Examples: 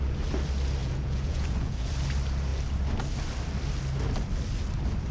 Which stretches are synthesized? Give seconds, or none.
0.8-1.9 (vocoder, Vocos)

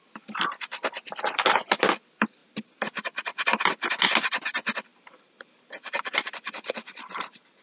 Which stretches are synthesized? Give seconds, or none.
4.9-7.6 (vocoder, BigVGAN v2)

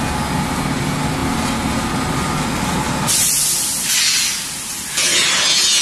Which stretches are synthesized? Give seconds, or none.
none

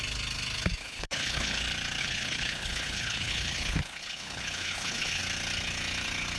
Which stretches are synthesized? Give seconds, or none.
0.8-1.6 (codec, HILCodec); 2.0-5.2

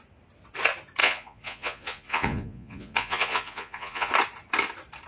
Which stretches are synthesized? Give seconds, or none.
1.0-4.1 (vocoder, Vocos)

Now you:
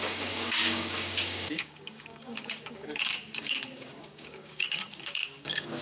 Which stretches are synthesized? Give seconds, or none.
0.0-5.8 (codec, DAC)